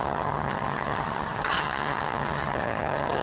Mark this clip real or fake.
fake